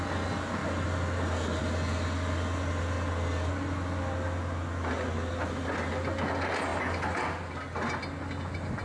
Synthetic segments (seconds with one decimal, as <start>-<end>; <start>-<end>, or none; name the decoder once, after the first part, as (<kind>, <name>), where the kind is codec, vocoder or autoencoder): none